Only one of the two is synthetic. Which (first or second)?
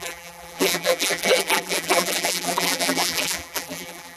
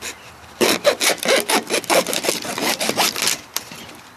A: first